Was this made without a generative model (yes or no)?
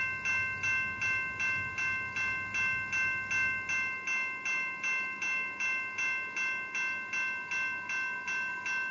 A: yes